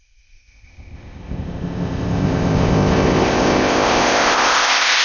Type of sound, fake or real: fake